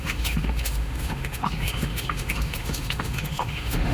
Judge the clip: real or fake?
fake